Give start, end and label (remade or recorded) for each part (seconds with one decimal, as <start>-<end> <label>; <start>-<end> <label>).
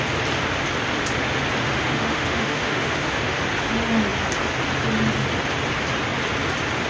0.0-1.6 recorded; 1.6-3.4 remade; 3.4-6.9 recorded